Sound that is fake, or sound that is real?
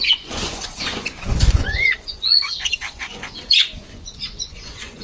fake